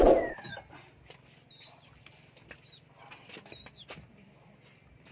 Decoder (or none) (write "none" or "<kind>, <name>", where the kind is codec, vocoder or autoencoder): none